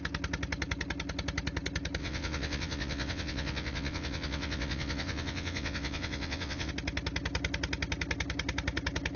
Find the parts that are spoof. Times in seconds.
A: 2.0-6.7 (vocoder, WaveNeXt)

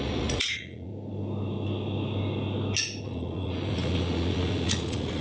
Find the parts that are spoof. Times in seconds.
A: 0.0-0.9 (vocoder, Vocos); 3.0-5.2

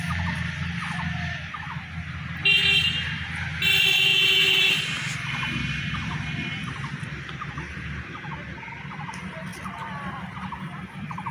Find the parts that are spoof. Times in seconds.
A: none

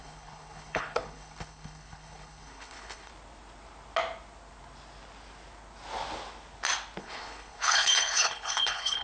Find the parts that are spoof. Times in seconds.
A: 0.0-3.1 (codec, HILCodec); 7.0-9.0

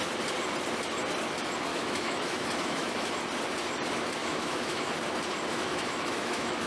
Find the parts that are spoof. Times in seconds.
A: 1.7-3.1 (autoencoder, DAC-VAE); 4.2-4.9; 5.5-6.7

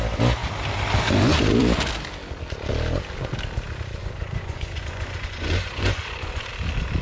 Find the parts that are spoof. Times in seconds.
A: 4.0-6.5 (vocoder, Vocos)

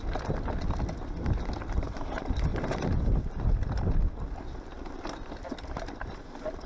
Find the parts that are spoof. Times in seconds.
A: 2.5-6.2 (vocoder, BigVGAN v2)

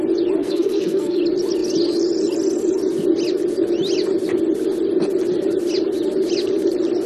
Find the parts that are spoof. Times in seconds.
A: 0.4-1.2 (codec, SNAC)